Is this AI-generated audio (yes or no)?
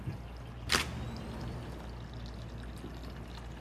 no